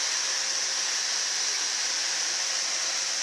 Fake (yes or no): no